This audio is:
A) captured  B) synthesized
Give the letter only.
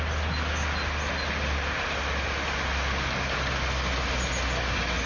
A